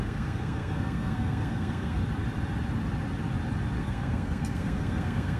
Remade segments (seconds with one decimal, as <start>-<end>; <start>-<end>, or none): 0.0-2.0; 3.8-5.4